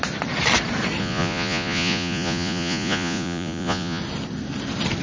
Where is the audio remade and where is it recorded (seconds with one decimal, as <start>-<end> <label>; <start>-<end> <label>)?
0.0-1.0 recorded; 1.0-4.0 remade; 4.0-5.0 recorded